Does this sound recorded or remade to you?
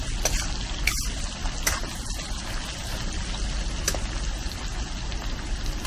recorded